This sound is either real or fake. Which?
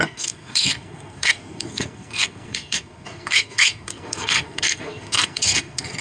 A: fake